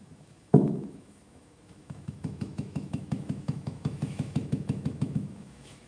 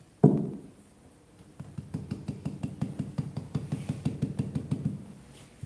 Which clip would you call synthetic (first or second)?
first